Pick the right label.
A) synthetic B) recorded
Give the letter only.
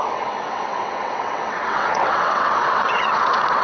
A